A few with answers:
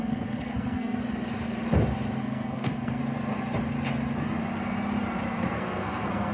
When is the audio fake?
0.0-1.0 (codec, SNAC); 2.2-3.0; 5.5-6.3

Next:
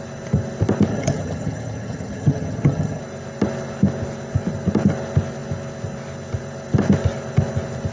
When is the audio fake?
0.9-3.0 (vocoder, HiFi-GAN)

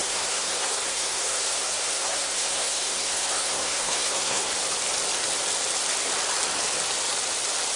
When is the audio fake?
0.0-4.5 (codec, SNAC)

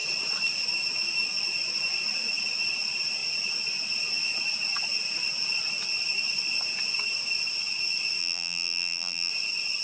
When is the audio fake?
8.2-9.3 (vocoder, BigVGAN v2)

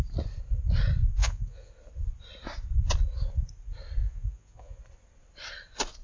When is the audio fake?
1.2-1.7 (vocoder, Vocos); 4.0-4.8

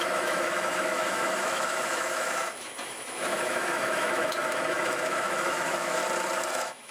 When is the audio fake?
0.0-6.0 (autoencoder, DAC-VAE); 6.5-6.9